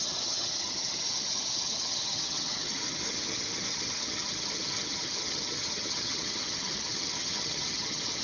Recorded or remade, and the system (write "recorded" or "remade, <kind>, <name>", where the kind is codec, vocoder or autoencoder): remade, vocoder, HiFi-GAN